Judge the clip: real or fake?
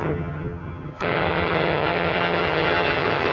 fake